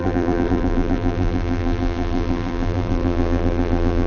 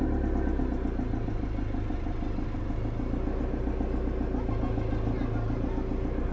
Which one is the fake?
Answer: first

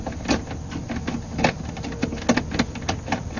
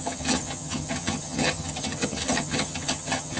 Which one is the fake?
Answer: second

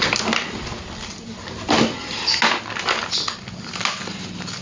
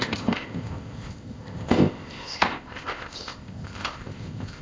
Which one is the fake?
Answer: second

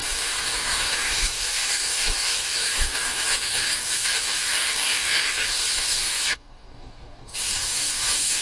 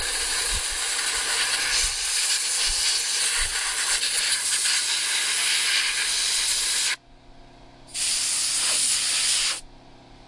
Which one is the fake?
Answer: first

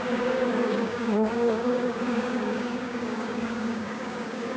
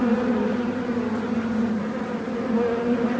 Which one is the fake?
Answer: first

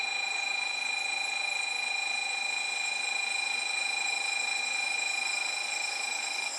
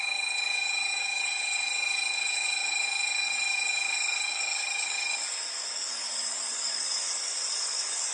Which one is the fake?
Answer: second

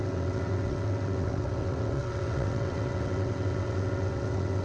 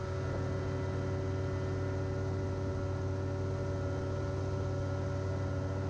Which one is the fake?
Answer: first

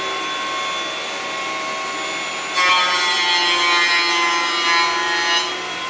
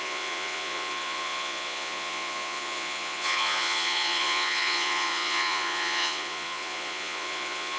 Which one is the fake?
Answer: second